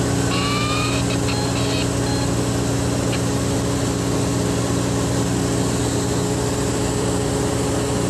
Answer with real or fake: real